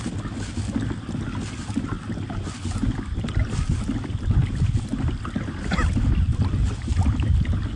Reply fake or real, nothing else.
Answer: real